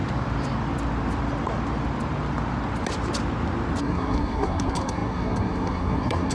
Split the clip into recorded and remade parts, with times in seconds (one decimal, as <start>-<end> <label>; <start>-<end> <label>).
0.0-3.8 recorded; 3.8-6.3 remade